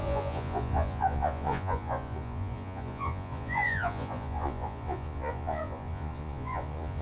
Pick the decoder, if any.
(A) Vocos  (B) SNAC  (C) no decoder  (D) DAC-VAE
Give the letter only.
A